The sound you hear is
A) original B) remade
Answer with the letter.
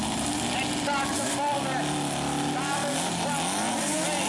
A